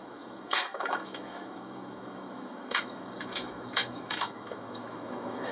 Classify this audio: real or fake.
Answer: fake